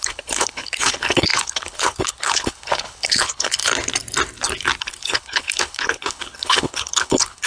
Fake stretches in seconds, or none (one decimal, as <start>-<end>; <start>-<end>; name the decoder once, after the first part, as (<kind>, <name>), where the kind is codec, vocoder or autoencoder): 0.0-3.7 (codec, HILCodec); 4.8-7.5

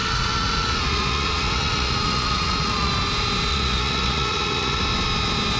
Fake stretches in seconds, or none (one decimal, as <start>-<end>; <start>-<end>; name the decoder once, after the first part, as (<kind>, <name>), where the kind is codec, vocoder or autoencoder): 0.0-2.9 (vocoder, Vocos); 3.5-4.8